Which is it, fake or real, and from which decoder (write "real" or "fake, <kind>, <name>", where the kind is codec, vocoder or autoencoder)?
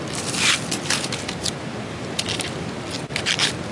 fake, vocoder, BigVGAN v2